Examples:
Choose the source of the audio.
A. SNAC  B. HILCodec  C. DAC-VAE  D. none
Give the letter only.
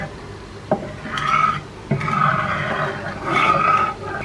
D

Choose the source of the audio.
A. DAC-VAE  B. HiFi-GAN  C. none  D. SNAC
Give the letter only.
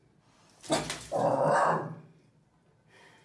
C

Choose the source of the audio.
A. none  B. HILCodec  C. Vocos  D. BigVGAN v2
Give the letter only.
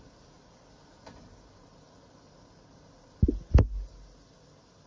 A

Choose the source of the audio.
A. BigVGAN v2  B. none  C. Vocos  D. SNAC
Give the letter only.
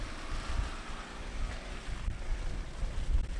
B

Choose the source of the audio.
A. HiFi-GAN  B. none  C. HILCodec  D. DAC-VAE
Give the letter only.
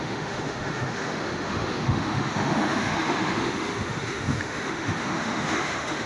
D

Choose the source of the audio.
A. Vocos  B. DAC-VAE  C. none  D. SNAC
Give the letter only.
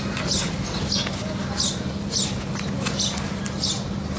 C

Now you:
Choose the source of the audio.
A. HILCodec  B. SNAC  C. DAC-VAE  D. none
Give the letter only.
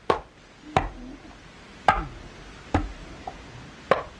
D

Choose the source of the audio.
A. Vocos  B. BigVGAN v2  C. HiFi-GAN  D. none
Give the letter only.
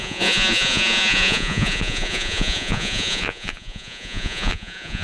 A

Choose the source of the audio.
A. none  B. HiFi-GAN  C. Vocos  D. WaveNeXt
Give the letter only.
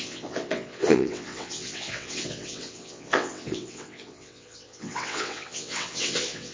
D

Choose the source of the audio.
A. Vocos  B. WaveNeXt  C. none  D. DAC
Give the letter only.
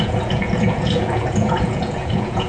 A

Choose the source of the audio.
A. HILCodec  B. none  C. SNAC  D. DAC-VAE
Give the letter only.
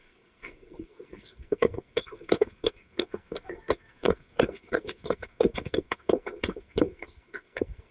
C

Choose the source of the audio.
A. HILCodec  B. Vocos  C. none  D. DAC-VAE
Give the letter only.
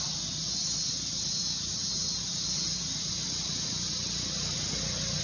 C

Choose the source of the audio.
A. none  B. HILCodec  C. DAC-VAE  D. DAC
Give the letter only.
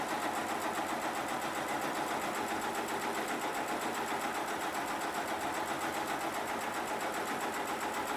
A